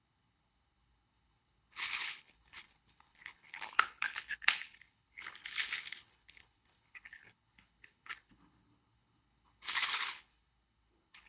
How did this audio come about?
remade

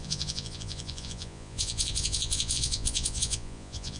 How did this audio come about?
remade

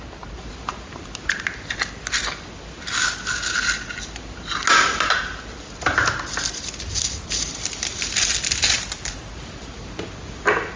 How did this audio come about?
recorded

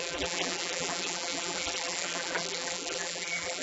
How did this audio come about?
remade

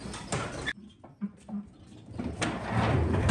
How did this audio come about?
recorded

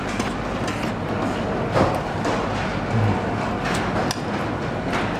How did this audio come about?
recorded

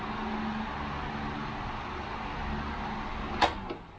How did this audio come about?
recorded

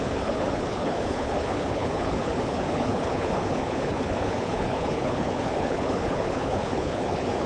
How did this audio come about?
remade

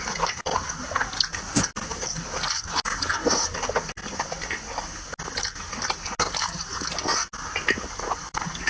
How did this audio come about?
recorded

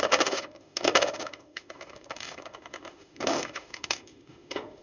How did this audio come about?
remade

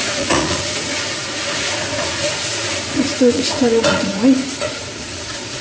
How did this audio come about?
remade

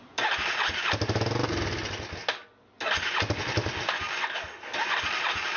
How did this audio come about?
recorded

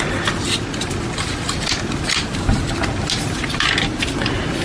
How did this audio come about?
recorded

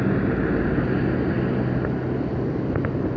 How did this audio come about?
recorded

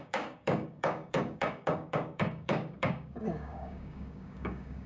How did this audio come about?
remade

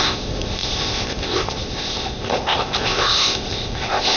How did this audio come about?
remade